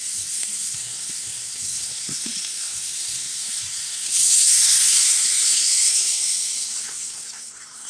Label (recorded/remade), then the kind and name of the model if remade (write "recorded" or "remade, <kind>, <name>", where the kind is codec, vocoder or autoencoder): remade, codec, SNAC